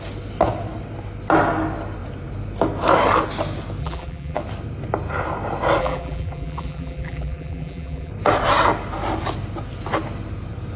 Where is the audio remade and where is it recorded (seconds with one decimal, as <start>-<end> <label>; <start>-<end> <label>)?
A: 0.0-3.8 recorded; 3.8-4.4 remade; 4.4-5.8 recorded; 5.8-8.1 remade; 8.1-10.8 recorded